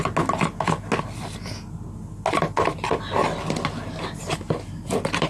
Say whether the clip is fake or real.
real